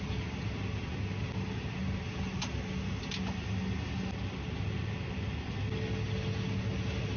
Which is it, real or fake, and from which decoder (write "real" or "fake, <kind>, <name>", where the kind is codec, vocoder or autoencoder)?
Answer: real